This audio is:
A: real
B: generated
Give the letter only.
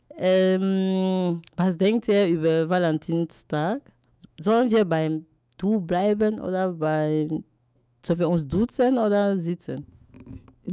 B